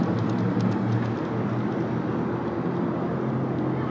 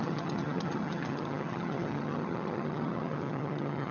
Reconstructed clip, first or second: second